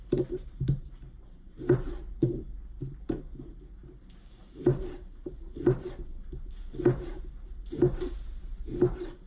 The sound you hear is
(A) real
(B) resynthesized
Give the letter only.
B